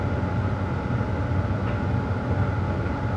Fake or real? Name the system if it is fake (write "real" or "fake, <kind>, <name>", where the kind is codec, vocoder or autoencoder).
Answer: real